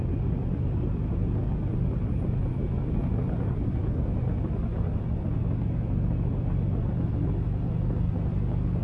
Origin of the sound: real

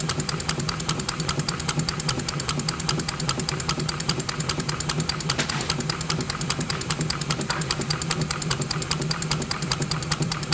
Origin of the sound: fake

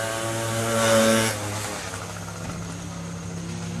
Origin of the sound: real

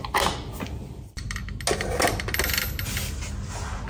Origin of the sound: real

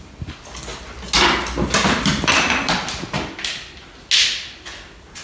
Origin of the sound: real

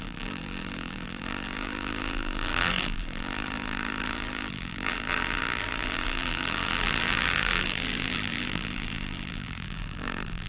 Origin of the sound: fake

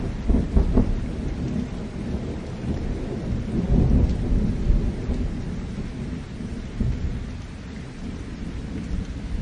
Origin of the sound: real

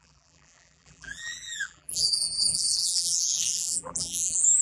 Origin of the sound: fake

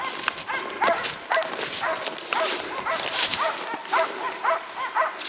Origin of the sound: real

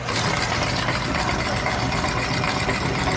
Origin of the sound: fake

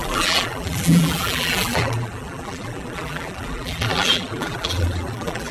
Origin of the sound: fake